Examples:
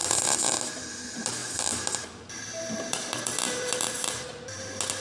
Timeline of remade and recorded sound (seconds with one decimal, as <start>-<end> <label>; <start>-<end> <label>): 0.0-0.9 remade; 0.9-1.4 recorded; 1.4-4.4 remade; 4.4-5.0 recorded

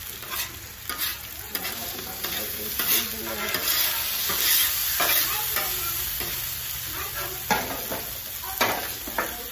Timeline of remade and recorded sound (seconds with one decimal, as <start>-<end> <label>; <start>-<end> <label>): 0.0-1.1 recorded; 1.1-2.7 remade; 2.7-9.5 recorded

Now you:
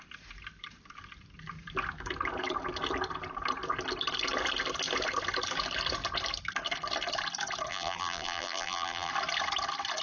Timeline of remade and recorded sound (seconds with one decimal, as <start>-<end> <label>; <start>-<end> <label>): 0.0-7.7 recorded; 7.7-9.1 remade; 9.1-10.0 recorded